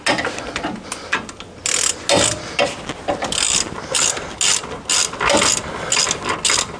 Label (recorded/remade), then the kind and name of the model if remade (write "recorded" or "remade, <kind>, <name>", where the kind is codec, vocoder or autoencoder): recorded